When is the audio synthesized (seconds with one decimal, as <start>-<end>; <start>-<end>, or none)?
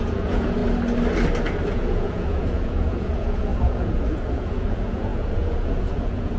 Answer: 0.0-0.6; 1.7-6.4